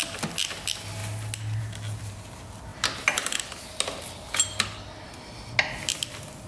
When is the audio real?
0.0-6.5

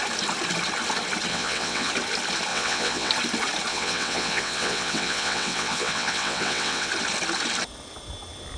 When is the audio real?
0.0-1.3; 1.9-2.5; 3.1-3.7; 6.9-8.6